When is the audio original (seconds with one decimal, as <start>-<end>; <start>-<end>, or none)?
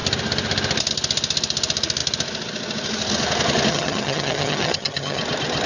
0.0-3.7; 5.2-5.7